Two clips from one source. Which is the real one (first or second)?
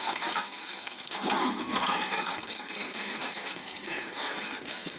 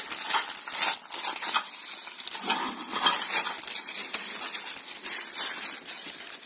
second